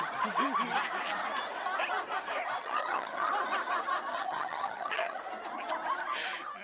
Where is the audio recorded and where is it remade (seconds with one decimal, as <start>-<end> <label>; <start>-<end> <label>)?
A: 0.0-2.6 recorded; 2.6-3.3 remade; 3.3-4.1 recorded; 4.1-5.2 remade; 5.2-6.6 recorded